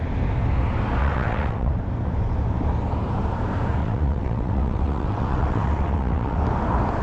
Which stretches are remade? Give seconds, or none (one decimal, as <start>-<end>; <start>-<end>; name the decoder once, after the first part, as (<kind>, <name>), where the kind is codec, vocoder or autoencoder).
1.0-1.7 (vocoder, WaveNeXt); 3.8-6.4